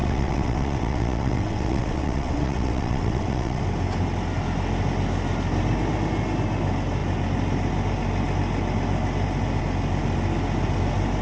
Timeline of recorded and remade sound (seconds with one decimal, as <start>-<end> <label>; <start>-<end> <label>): 0.0-3.6 remade; 3.6-11.2 recorded